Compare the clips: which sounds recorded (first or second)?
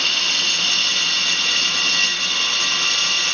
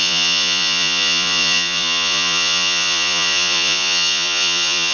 first